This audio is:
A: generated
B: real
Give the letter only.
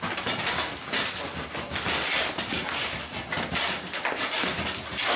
B